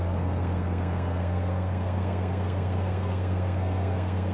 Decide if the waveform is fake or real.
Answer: fake